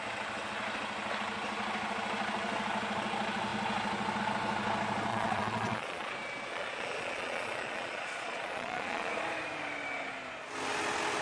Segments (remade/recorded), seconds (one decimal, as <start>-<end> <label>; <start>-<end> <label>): 0.0-5.1 recorded; 5.1-6.1 remade; 6.1-6.5 recorded; 6.5-9.1 remade; 9.1-11.2 recorded